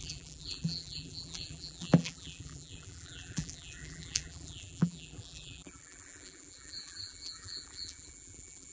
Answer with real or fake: fake